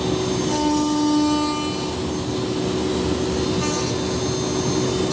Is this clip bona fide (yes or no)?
yes